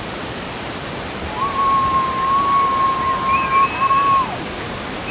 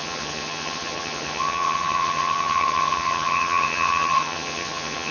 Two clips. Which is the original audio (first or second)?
first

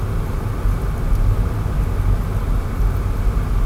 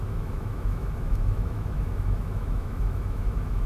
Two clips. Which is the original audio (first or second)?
first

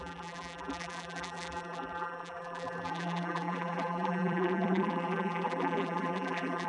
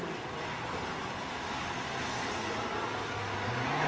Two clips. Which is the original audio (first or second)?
second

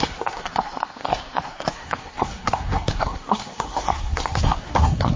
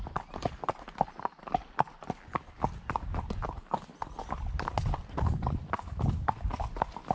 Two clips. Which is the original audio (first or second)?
second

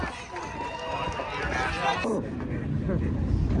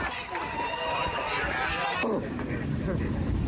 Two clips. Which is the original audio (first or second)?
first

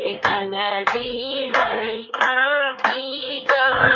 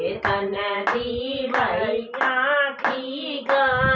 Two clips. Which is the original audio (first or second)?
second